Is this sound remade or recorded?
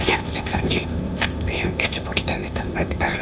remade